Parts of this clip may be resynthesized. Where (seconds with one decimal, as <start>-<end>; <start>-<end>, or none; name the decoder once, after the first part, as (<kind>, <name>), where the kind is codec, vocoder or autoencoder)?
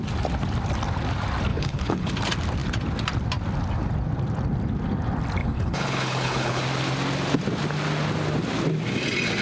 1.5-2.1 (codec, HILCodec); 5.4-6.6